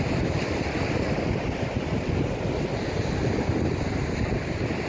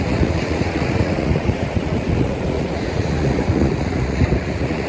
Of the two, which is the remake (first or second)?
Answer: second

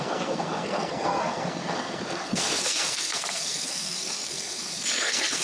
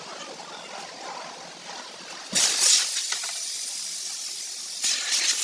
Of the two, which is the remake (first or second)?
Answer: first